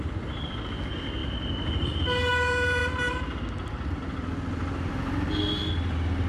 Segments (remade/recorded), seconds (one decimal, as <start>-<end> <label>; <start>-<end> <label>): 0.0-6.3 recorded